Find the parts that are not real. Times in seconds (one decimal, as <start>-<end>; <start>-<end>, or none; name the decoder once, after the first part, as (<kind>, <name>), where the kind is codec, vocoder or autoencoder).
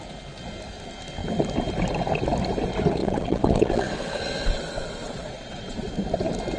3.0-5.9 (vocoder, WaveNeXt)